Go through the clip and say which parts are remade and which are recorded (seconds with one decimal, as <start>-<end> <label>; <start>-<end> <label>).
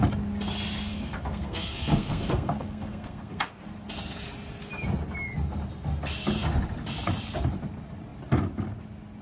0.0-0.9 recorded; 0.9-3.5 remade; 3.5-9.2 recorded